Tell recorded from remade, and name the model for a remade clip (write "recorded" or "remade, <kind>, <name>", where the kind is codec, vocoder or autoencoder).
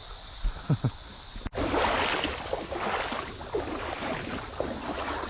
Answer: recorded